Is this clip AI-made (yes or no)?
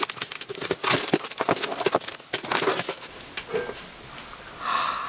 no